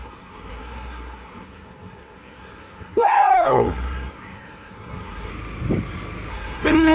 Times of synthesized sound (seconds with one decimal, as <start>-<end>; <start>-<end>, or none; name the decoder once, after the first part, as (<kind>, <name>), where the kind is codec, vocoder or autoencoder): 0.0-5.3 (codec, SNAC); 6.3-6.9